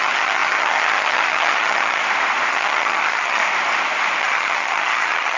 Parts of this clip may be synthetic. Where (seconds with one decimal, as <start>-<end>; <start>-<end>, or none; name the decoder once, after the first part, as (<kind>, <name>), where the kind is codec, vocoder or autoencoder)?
0.0-2.0 (vocoder, HiFi-GAN); 2.5-3.4; 4.2-5.4

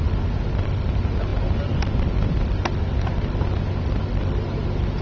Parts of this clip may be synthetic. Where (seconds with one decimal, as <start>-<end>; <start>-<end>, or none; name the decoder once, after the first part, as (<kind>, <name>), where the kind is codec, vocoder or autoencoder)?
none

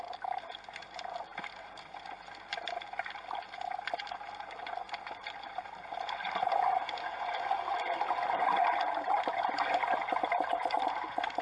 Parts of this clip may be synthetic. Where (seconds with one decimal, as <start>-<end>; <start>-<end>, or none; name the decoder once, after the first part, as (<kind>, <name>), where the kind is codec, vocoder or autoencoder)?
4.7-8.5 (vocoder, BigVGAN v2)